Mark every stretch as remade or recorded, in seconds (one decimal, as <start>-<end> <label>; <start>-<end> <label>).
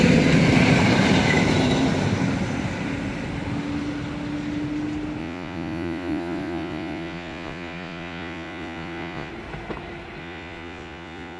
0.0-5.2 recorded; 5.2-9.3 remade; 9.3-10.2 recorded; 10.2-11.4 remade